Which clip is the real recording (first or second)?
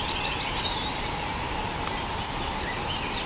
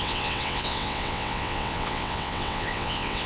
first